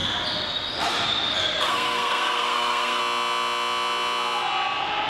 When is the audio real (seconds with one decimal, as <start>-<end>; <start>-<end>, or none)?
0.0-1.4; 3.0-5.1